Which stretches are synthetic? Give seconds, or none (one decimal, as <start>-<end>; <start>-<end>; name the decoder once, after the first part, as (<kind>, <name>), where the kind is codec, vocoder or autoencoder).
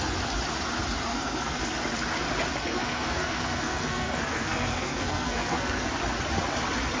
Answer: 1.1-1.6 (codec, SNAC); 2.6-5.9